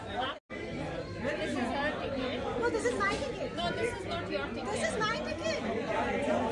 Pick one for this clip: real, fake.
real